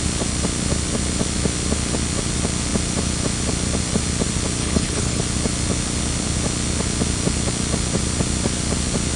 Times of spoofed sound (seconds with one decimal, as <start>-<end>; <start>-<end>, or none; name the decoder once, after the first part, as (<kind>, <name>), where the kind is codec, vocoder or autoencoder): 4.6-5.2 (codec, HILCodec)